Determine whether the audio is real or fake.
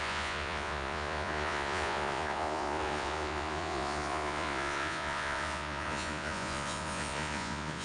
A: fake